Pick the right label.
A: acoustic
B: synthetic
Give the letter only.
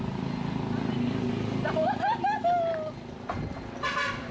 A